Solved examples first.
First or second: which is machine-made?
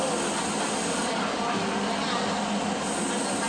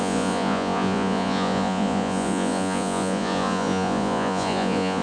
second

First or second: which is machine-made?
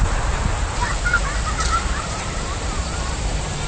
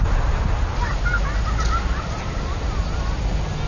first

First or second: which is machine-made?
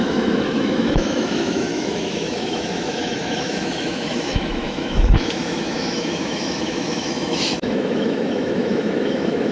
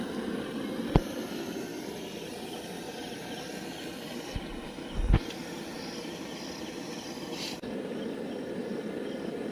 first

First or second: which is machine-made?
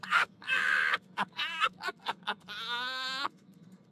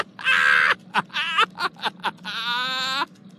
first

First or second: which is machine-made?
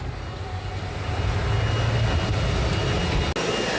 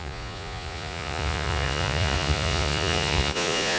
second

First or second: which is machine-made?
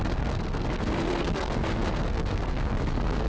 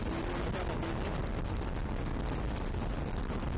first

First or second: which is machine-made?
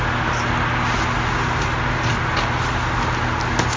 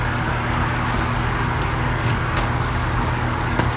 second